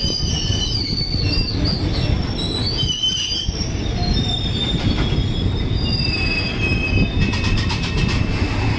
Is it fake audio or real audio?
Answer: real